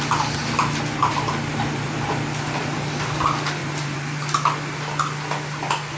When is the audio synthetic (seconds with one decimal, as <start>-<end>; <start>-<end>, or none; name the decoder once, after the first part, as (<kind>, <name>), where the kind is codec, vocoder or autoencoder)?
1.0-2.1 (vocoder, BigVGAN v2); 3.6-4.2